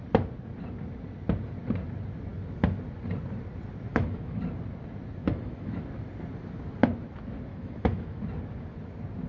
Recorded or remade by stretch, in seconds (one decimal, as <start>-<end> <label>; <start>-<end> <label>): 0.0-3.9 recorded; 3.9-4.4 remade; 4.4-5.2 recorded; 5.2-5.8 remade; 5.8-7.5 recorded; 7.5-8.2 remade; 8.2-9.3 recorded